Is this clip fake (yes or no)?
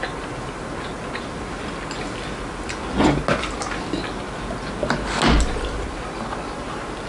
no